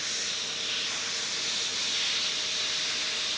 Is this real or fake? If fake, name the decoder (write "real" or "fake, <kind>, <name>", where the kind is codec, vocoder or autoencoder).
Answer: real